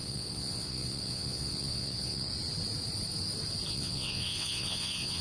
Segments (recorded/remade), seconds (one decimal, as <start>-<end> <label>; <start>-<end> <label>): 0.0-2.3 remade; 2.3-3.7 recorded; 3.7-5.2 remade